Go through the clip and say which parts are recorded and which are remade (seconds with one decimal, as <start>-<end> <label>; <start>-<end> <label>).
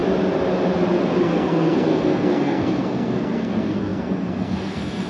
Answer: 0.0-1.2 recorded; 1.2-5.1 remade